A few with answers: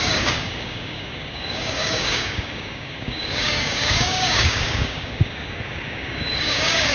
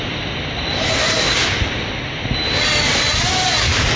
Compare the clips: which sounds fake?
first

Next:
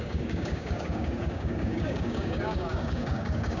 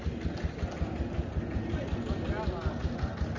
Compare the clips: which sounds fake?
first